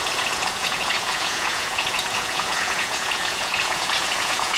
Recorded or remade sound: remade